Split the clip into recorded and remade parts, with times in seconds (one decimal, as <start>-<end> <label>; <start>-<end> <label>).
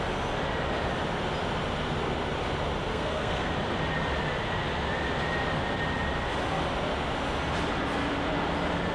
0.0-2.9 recorded; 2.9-3.5 remade; 3.5-8.9 recorded